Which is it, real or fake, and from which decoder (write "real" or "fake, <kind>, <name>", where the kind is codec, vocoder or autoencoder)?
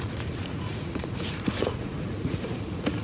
fake, vocoder, Vocos